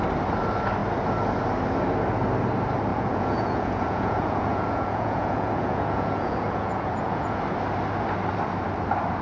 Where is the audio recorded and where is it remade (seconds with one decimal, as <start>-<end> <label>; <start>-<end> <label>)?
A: 0.0-2.9 recorded; 2.9-7.4 remade; 7.4-9.2 recorded